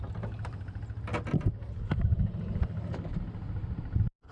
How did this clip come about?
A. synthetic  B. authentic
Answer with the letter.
B